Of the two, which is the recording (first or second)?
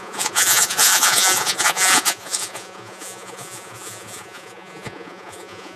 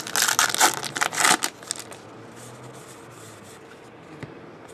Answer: second